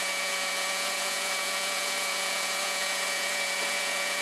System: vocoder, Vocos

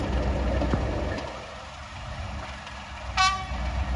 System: none